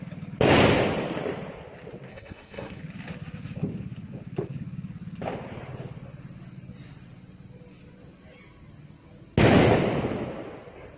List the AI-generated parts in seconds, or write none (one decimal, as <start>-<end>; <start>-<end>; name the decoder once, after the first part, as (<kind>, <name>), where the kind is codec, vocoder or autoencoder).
2.1-2.8 (codec, SNAC)

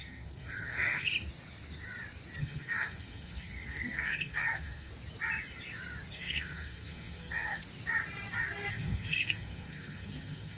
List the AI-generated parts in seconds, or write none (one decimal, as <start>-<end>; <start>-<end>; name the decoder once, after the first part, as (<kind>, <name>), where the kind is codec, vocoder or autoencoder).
0.0-1.1 (codec, SNAC); 2.4-4.9; 6.1-7.6; 8.7-10.6

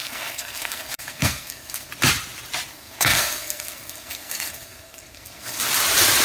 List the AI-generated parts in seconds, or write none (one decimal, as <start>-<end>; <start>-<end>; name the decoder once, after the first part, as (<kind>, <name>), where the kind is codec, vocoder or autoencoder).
0.0-1.9 (codec, SNAC); 2.7-5.6

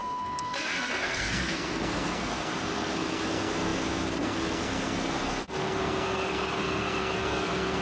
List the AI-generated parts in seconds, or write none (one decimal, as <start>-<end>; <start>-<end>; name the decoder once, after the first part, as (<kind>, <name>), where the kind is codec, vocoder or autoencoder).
0.0-7.8 (codec, SNAC)

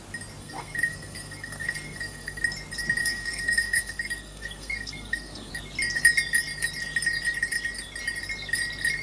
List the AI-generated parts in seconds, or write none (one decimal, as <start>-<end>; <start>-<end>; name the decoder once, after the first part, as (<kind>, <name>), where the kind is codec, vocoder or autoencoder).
0.4-2.4 (codec, SNAC); 3.0-5.5

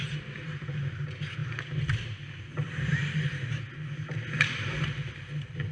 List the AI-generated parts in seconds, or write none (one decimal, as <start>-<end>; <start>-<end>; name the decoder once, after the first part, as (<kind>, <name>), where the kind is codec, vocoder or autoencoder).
none

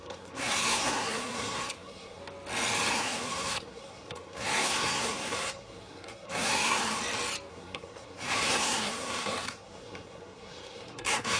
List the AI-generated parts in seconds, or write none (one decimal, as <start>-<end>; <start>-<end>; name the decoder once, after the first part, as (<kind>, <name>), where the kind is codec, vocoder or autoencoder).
0.0-2.2 (codec, SNAC); 2.9-7.0; 7.5-11.4

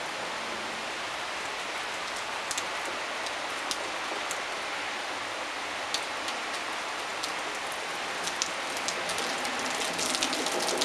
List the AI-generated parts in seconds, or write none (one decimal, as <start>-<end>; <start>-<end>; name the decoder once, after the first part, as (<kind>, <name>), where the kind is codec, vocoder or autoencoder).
none